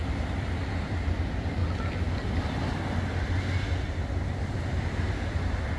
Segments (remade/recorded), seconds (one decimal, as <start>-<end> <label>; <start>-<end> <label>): 0.0-0.6 recorded; 0.6-1.6 remade; 1.6-5.1 recorded; 5.1-5.8 remade